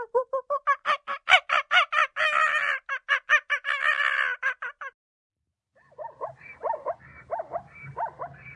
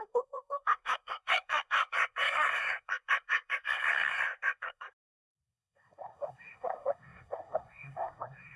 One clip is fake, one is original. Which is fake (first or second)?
second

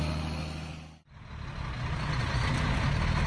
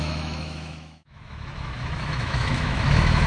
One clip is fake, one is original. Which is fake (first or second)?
second